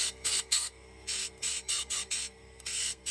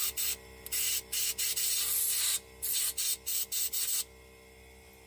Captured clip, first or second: second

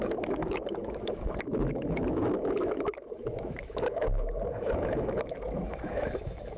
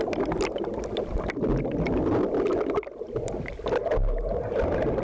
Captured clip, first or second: second